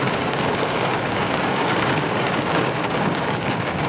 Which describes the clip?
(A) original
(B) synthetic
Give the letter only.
B